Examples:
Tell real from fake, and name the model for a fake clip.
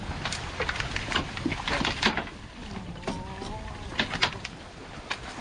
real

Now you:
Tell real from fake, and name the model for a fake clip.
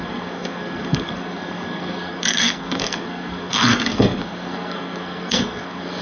fake, codec, SNAC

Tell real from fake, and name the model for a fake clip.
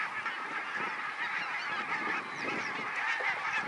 real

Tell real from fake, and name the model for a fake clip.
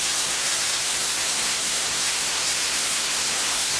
fake, codec, SNAC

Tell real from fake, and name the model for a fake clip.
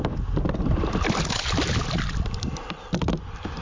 real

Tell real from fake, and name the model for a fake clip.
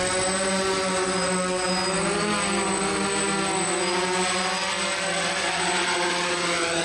real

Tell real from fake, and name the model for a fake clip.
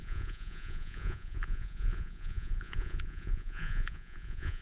fake, vocoder, Vocos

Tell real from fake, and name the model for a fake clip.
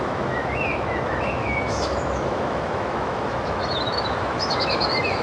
fake, autoencoder, DAC-VAE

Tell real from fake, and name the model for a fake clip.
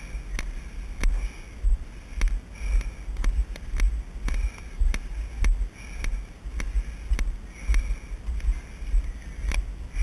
real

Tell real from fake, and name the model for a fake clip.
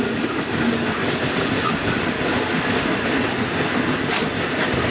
real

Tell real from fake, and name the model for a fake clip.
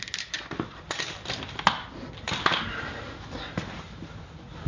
real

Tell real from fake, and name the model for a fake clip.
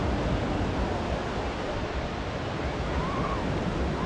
real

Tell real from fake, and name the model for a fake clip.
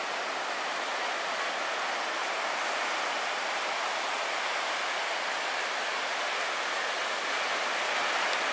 real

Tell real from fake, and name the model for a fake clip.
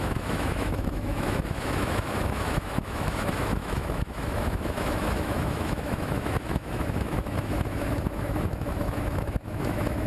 fake, autoencoder, DAC-VAE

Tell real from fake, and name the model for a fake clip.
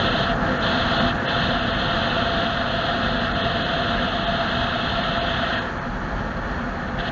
real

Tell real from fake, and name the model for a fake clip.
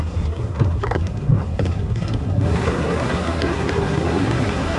fake, codec, SNAC